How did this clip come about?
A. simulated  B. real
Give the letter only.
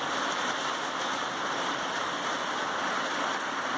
B